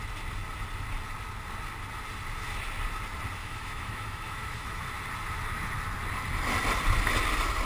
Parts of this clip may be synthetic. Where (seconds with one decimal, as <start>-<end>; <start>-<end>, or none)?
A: 3.4-4.8